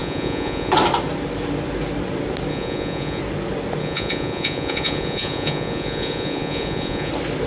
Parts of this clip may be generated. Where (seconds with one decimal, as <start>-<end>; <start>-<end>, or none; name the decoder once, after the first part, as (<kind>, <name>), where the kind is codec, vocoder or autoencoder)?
0.0-0.7 (vocoder, Vocos); 2.5-3.2; 3.8-7.1